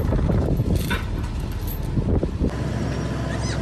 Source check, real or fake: real